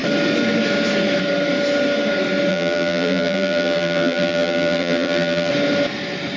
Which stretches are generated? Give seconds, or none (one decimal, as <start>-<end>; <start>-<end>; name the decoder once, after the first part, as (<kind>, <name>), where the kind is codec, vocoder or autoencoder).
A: 2.5-5.5 (vocoder, BigVGAN v2)